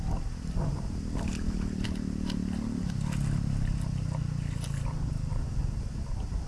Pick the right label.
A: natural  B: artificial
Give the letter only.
A